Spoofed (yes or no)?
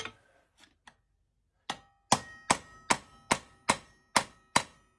no